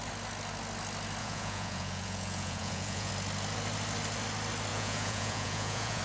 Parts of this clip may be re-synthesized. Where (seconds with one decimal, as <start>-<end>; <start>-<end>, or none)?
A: 1.2-3.1; 4.7-6.0